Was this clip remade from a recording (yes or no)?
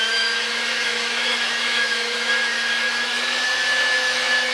yes